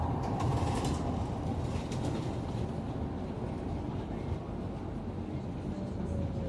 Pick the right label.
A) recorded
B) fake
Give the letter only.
A